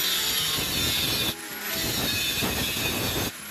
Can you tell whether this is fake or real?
real